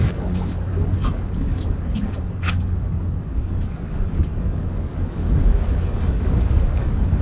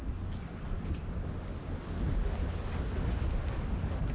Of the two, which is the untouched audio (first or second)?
second